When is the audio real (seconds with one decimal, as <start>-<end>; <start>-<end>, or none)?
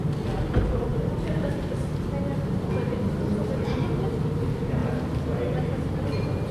0.0-6.5